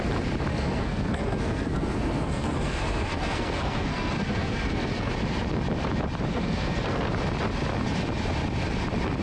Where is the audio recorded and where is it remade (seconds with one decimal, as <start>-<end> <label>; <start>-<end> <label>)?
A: 0.0-0.5 recorded; 0.5-5.1 remade; 5.1-6.3 recorded; 6.3-7.0 remade; 7.0-9.2 recorded